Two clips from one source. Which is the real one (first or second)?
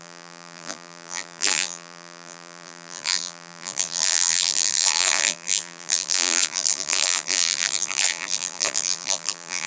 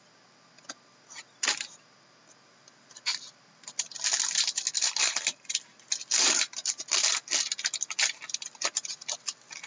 second